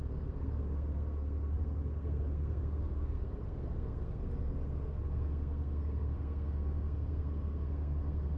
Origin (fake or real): fake